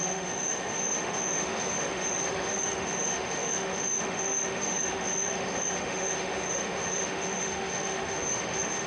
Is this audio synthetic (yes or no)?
yes